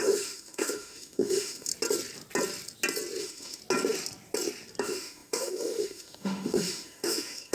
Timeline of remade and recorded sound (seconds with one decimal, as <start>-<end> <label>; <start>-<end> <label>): 0.0-1.7 remade; 1.7-3.2 recorded; 3.2-3.6 remade; 3.6-4.8 recorded; 4.8-7.5 remade